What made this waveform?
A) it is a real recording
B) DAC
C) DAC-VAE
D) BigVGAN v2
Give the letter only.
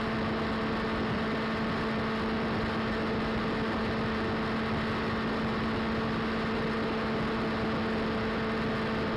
A